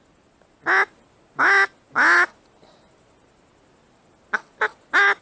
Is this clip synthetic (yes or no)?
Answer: no